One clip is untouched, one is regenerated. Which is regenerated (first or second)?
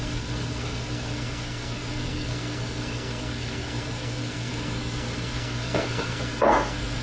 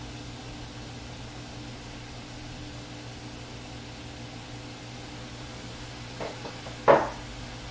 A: first